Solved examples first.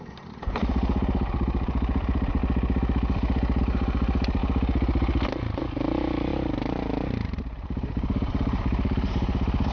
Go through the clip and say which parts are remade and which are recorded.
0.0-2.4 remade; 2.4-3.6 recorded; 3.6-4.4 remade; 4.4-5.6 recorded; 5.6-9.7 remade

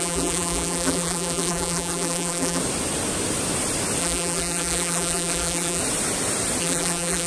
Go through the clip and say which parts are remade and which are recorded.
0.0-2.6 remade; 2.6-4.0 recorded; 4.0-5.8 remade; 5.8-6.6 recorded; 6.6-7.3 remade

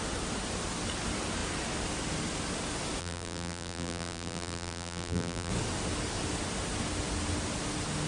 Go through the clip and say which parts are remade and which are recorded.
0.0-3.0 recorded; 3.0-5.5 remade; 5.5-8.1 recorded

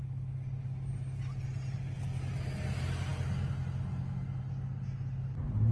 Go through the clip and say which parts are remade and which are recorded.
0.0-5.7 recorded